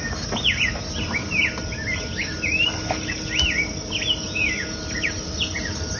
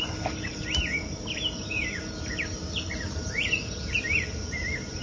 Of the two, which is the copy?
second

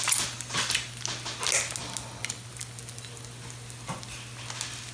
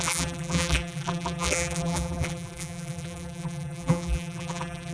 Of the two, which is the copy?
second